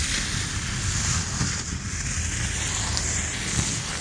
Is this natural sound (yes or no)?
yes